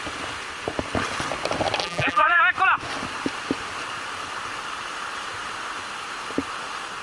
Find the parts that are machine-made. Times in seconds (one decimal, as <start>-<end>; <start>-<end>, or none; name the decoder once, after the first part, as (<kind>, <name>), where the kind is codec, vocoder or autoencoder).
1.8-2.4 (vocoder, BigVGAN v2)